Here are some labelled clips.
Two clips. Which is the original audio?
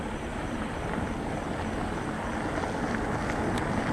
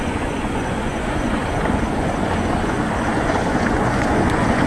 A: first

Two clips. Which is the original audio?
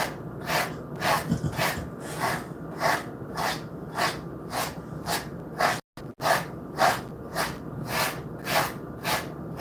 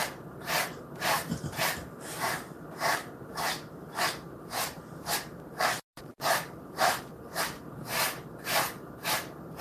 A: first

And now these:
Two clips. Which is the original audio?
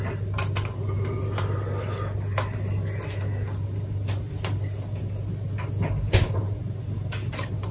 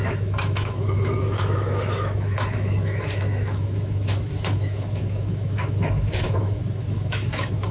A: first